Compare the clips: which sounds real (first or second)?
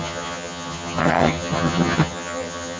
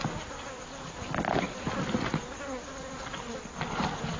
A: second